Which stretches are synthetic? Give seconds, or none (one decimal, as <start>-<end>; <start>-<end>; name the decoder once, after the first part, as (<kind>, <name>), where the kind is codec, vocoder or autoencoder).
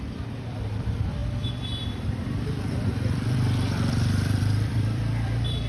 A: 0.0-5.7 (vocoder, BigVGAN v2)